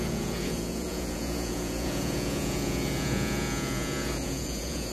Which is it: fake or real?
fake